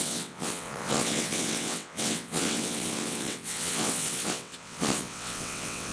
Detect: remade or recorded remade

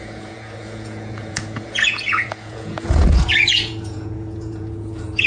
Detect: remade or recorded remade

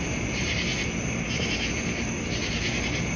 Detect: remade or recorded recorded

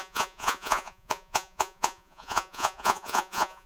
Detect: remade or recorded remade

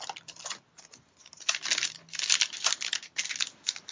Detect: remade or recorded recorded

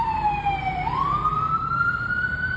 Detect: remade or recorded remade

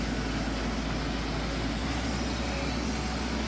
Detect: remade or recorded recorded